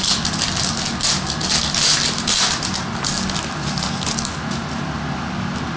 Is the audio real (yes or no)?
yes